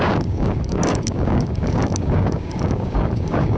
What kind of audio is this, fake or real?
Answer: fake